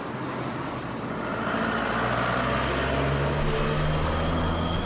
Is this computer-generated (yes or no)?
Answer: no